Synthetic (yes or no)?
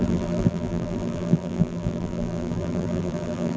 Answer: yes